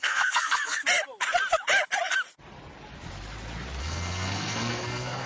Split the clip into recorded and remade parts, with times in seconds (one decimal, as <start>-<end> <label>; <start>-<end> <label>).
0.0-0.8 remade; 0.8-3.8 recorded; 3.8-5.3 remade